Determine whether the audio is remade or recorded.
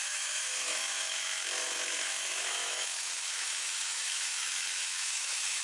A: remade